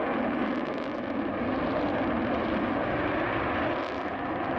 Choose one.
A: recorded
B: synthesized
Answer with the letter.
A